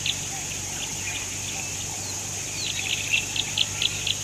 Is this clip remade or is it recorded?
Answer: recorded